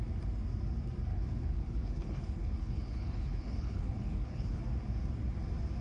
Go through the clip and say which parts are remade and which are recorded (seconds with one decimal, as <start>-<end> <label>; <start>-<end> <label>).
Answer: 0.0-1.1 recorded; 1.1-4.6 remade; 4.6-5.8 recorded